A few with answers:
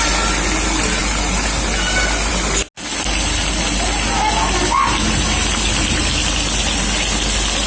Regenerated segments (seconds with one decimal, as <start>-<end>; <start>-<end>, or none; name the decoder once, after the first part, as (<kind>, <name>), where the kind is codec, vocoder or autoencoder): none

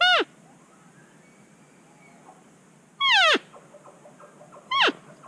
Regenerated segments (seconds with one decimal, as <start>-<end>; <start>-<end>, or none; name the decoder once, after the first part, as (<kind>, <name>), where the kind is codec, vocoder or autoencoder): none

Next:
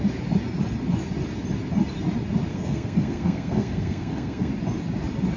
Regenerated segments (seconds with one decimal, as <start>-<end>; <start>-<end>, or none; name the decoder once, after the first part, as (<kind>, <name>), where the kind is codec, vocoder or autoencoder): 2.5-4.5 (codec, SNAC)

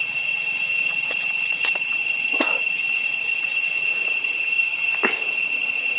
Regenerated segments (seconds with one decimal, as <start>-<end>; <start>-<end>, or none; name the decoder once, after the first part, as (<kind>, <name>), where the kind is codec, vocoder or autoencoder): 0.0-4.5 (vocoder, WaveNeXt); 5.3-6.0